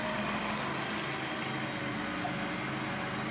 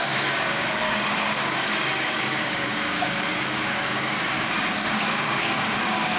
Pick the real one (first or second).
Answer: first